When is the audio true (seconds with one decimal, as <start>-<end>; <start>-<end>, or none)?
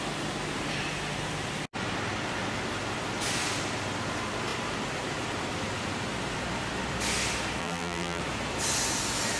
0.0-7.6; 8.2-9.4